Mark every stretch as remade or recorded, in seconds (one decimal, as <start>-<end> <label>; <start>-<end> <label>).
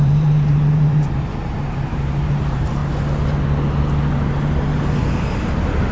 0.0-2.8 remade; 2.8-4.1 recorded; 4.1-5.9 remade